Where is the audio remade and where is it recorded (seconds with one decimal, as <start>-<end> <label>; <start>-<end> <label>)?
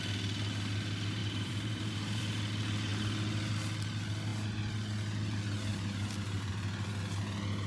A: 0.0-1.2 recorded; 1.2-2.2 remade; 2.2-5.7 recorded; 5.7-6.5 remade; 6.5-7.7 recorded